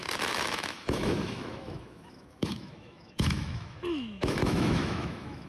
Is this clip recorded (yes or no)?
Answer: no